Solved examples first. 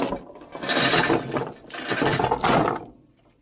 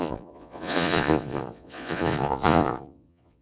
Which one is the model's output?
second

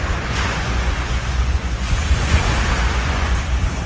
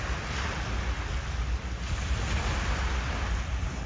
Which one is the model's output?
first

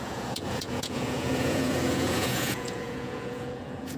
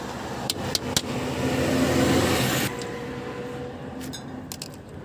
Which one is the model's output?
first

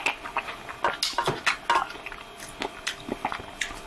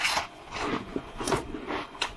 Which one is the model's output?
second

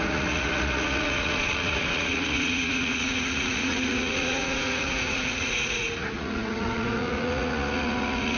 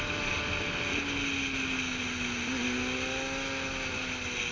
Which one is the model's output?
first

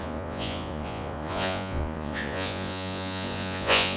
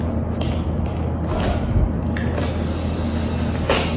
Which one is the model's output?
first